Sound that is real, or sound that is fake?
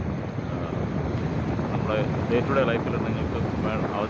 real